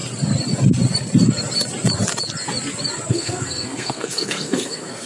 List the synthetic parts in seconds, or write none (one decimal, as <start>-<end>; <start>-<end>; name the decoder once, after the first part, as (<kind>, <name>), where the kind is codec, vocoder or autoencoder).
3.1-5.1 (codec, SNAC)

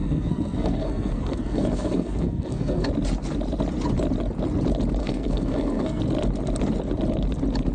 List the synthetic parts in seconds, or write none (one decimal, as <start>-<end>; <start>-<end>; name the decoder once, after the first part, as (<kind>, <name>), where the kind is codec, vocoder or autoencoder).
0.0-2.9 (codec, SNAC); 5.0-6.0

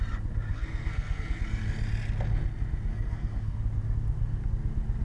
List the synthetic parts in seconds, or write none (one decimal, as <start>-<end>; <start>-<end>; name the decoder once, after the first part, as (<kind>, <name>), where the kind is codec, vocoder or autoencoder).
0.5-1.4 (codec, SNAC); 2.9-3.6